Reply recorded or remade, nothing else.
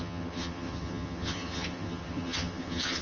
remade